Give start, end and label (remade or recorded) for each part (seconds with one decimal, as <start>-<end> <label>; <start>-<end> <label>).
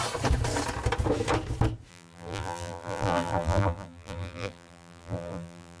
0.0-1.9 recorded; 1.9-5.8 remade